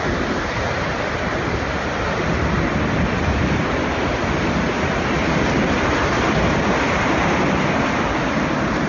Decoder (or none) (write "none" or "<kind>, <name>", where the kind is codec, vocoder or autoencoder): none